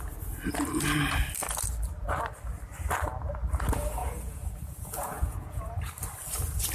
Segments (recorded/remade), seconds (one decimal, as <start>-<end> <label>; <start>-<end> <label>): 0.0-4.0 recorded; 4.0-5.9 remade; 5.9-6.7 recorded